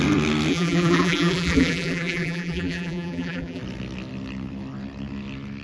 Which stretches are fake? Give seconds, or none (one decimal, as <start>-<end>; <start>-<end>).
0.5-3.6